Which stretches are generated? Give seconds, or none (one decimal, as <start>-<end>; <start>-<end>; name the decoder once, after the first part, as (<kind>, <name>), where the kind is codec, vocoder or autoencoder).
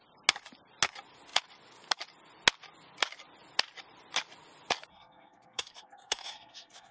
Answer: 4.9-6.9 (codec, SNAC)